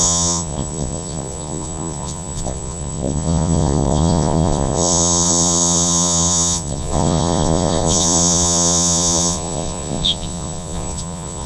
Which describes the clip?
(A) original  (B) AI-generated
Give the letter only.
B